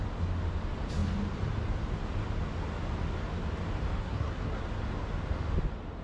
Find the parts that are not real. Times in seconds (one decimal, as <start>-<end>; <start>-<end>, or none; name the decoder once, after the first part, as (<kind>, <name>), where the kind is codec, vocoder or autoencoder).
4.0-4.6 (codec, SNAC)